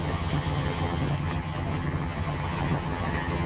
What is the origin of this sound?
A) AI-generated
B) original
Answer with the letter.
A